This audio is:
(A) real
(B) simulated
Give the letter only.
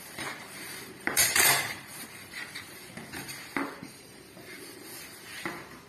B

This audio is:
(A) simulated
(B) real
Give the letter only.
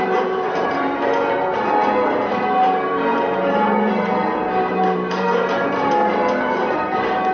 A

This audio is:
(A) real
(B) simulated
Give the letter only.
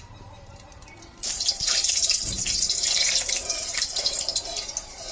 B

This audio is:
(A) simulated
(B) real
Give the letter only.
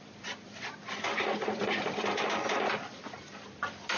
A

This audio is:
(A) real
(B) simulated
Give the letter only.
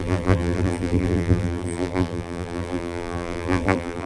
B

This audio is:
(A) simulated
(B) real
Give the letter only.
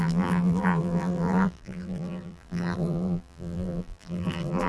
A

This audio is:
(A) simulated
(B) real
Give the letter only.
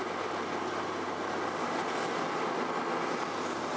B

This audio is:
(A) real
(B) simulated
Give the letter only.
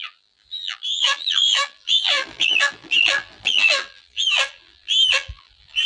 B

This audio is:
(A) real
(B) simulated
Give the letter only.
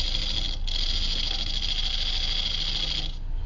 A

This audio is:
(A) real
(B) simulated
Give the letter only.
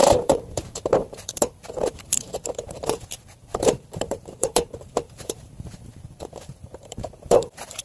B